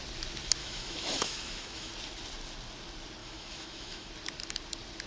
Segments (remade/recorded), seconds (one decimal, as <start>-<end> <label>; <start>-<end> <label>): 0.0-0.6 recorded; 0.6-1.9 remade; 1.9-3.2 recorded; 3.2-4.1 remade; 4.1-5.1 recorded

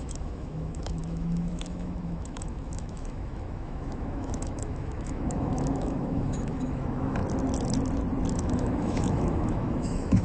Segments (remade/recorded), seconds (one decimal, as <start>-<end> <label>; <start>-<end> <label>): 0.0-7.2 remade; 7.2-8.3 recorded; 8.3-10.2 remade